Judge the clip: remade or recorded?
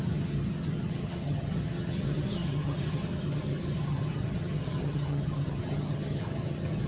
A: remade